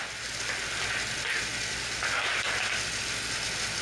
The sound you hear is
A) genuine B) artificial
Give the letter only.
A